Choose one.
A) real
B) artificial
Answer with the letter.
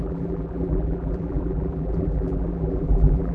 B